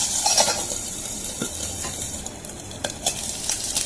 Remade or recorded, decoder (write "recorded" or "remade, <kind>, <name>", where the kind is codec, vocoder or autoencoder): remade, vocoder, BigVGAN v2